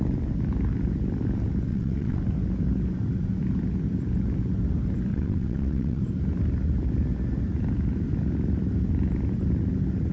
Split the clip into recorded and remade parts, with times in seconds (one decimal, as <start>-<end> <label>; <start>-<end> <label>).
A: 0.0-1.7 recorded; 1.7-2.2 remade; 2.2-5.1 recorded; 5.1-6.0 remade; 6.0-10.1 recorded